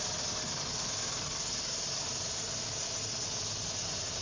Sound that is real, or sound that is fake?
real